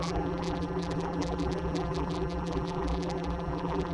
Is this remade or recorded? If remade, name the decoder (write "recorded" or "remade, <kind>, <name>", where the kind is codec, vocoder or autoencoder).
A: remade, vocoder, BigVGAN v2